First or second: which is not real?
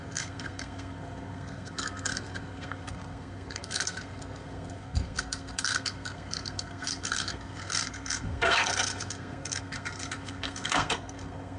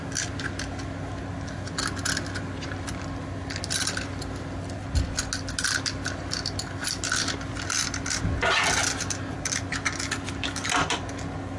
first